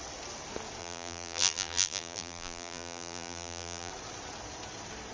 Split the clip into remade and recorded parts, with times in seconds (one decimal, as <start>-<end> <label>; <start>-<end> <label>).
0.0-0.8 recorded; 0.8-3.9 remade; 3.9-5.1 recorded